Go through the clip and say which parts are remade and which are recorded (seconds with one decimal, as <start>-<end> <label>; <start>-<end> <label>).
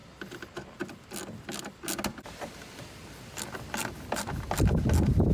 0.0-5.3 recorded